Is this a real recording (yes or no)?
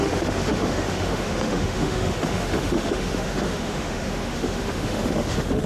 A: no